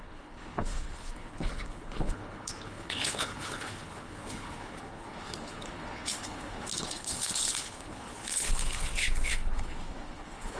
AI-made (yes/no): yes